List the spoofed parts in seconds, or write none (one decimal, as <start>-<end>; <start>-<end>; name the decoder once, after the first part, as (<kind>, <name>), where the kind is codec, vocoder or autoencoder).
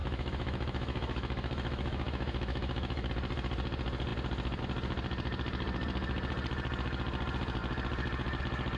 0.0-3.1 (autoencoder, DAC-VAE)